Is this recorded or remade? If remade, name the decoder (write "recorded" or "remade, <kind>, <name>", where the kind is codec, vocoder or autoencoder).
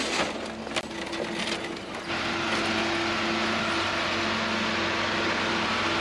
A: recorded